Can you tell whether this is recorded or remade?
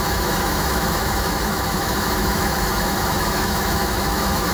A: remade